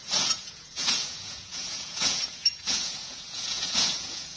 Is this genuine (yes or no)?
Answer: no